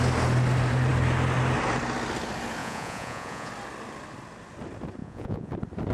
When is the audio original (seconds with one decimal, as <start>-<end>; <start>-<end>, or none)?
0.0-2.6; 3.5-5.0; 5.5-5.9